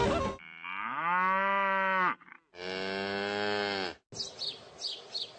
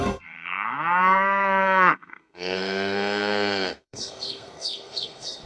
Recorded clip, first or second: first